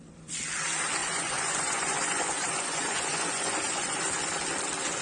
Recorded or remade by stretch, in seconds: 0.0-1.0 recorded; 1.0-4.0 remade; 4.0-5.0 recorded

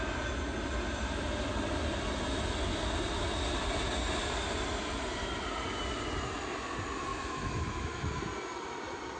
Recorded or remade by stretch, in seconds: 0.0-7.1 recorded; 7.1-8.2 remade; 8.2-9.2 recorded

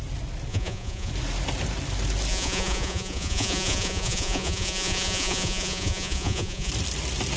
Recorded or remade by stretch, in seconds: 0.0-0.5 recorded; 0.5-1.1 remade; 1.1-2.3 recorded; 2.3-6.7 remade; 6.7-7.4 recorded